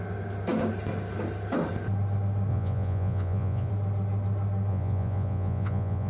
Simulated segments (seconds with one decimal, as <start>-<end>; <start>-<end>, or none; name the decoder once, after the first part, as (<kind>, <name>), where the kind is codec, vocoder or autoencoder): 2.5-3.7 (vocoder, Vocos); 4.7-6.1